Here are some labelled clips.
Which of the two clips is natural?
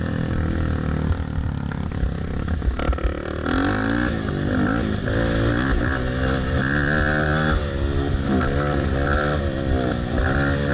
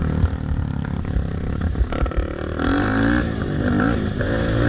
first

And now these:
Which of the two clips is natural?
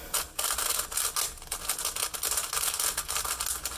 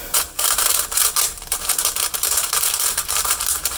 first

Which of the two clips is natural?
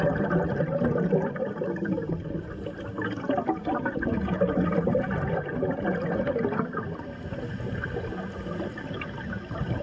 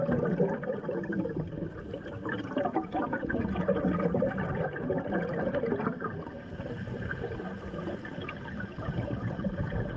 first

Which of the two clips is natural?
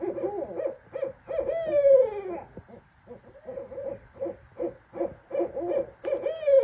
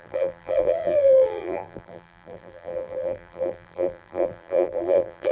first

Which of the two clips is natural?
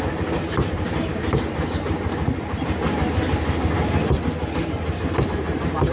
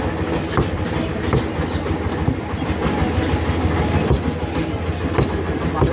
second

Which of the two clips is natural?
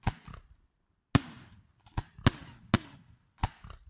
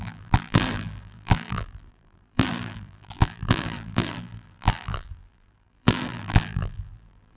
first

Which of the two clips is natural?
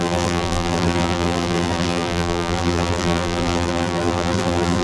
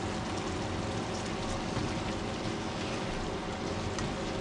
second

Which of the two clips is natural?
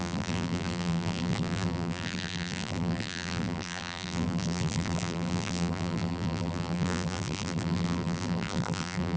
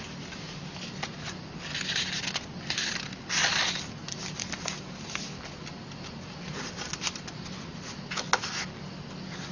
second